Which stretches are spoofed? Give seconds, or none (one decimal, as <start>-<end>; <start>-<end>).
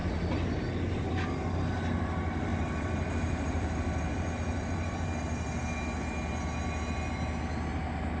2.5-4.3